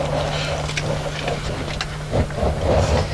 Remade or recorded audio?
recorded